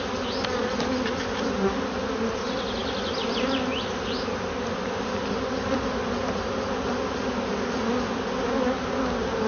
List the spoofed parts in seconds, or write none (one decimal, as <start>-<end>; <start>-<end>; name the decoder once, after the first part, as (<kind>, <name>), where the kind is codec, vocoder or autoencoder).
none